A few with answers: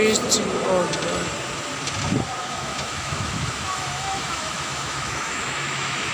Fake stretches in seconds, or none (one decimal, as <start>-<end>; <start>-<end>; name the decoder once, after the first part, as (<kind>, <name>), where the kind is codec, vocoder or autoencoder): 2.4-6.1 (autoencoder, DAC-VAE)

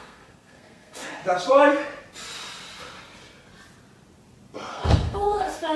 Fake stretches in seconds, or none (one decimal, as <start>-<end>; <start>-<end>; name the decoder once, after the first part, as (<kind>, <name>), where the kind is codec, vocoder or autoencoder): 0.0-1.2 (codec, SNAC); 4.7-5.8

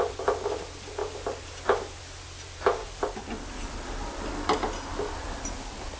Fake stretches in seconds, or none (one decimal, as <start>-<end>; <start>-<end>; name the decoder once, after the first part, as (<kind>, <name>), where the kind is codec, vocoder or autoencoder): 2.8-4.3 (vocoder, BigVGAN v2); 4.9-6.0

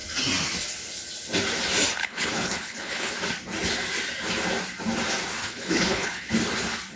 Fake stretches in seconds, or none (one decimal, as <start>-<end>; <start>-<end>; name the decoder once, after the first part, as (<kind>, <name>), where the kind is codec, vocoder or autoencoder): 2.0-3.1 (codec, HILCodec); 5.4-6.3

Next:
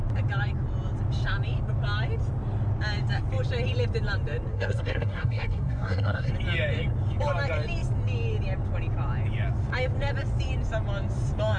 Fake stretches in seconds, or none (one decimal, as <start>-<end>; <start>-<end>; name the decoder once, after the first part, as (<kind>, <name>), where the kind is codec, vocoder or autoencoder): 4.5-6.3 (codec, SNAC)